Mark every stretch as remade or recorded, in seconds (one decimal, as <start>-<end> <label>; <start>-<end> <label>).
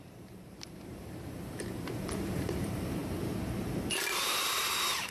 0.0-3.0 remade; 3.0-3.9 recorded; 3.9-5.1 remade